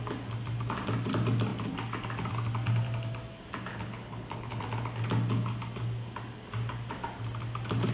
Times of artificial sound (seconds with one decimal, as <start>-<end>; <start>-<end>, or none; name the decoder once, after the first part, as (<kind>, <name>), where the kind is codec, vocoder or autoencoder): 3.7-4.6 (codec, HILCodec)